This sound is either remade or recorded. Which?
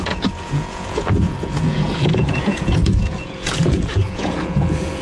remade